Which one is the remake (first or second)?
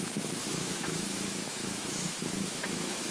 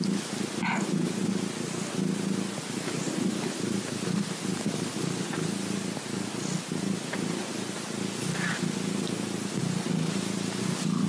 first